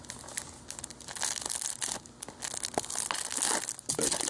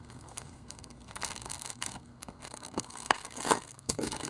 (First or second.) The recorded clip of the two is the first